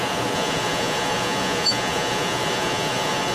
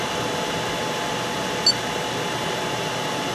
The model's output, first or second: first